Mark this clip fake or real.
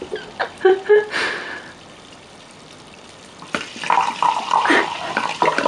real